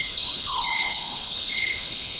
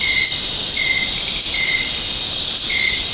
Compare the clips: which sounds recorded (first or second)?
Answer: second